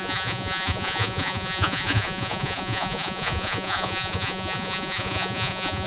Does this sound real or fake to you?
fake